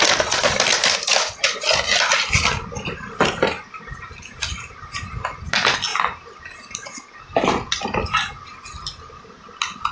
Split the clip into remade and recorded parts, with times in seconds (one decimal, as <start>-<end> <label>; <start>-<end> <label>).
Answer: 0.0-9.9 recorded